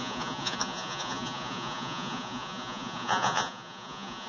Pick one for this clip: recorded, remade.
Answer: remade